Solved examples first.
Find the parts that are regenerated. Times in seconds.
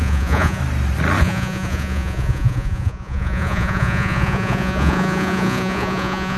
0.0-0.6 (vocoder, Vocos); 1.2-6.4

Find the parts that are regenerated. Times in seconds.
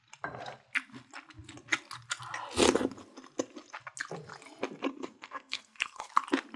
4.9-6.1 (codec, SNAC)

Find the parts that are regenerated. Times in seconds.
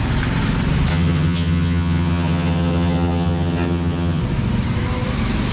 0.9-4.2 (vocoder, HiFi-GAN)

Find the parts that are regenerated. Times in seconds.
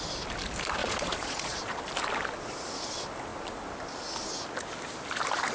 0.8-1.8 (vocoder, Vocos)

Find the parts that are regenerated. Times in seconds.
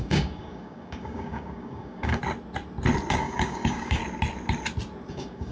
0.0-2.2 (codec, DAC); 3.1-4.0; 5.1-5.5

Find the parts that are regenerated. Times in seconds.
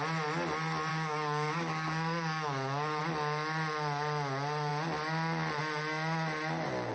0.9-3.0 (codec, DAC)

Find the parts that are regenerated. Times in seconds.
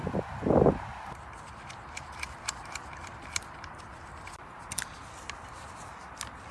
none